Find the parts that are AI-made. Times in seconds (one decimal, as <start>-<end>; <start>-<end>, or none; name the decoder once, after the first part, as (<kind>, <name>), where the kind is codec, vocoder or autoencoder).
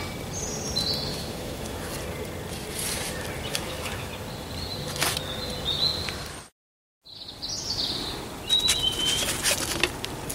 1.1-1.9 (autoencoder, DAC-VAE); 3.5-4.1